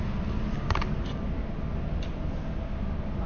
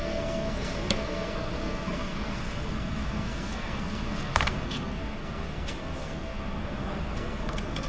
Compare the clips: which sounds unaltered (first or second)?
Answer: first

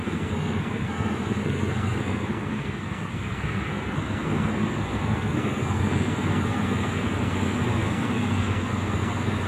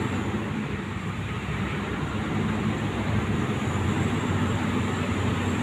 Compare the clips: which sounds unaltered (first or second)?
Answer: second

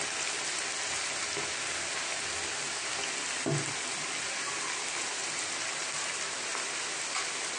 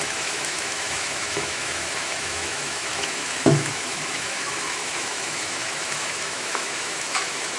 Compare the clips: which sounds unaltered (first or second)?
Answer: first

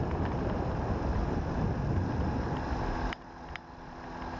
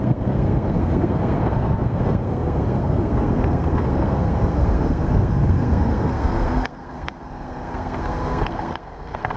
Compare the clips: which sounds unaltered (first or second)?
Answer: first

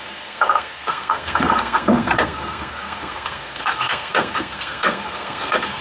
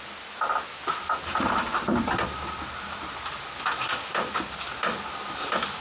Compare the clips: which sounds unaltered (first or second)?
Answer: second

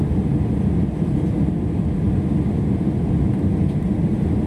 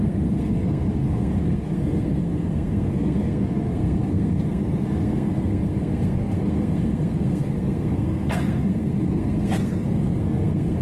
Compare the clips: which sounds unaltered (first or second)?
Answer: first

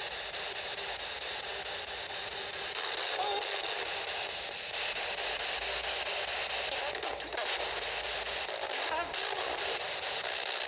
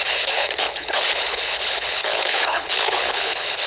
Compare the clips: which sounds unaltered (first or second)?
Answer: first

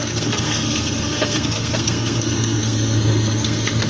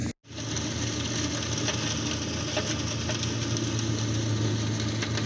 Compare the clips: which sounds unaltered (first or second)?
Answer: second